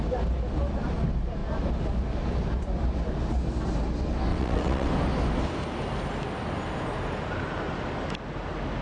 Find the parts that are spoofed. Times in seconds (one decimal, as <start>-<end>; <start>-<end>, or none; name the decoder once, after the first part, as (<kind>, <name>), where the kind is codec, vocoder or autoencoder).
4.3-4.9 (vocoder, WaveNeXt)